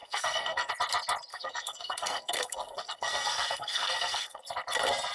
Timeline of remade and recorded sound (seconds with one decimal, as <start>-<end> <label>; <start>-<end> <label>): 0.0-0.7 remade; 0.7-1.3 recorded; 1.3-4.4 remade; 4.4-5.1 recorded